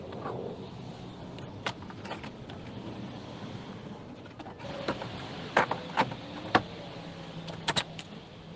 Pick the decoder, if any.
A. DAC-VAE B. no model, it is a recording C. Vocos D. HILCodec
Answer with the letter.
B